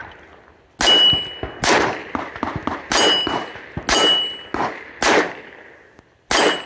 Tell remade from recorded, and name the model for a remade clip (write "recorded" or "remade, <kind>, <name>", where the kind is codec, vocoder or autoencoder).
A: recorded